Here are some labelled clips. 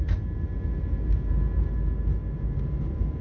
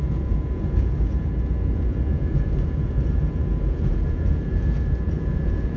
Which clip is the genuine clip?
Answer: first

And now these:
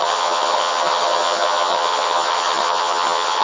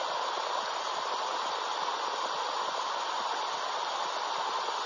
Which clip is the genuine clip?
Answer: second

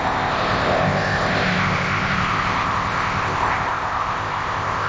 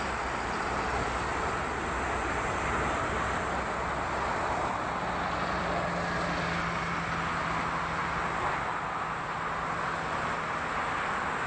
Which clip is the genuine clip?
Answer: second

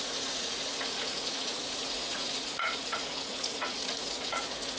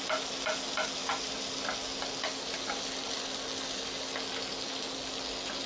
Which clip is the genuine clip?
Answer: second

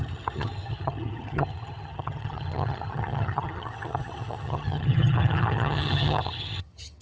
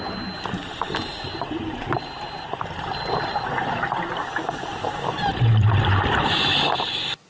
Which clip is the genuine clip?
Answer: second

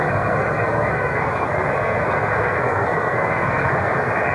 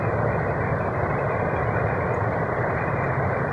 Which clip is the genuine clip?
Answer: second